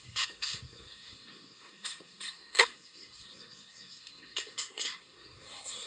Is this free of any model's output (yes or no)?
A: no